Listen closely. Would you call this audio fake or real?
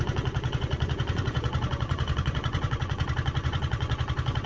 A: fake